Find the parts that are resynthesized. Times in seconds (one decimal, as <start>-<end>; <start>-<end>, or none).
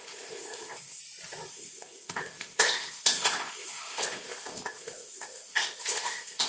0.0-1.0; 1.5-6.5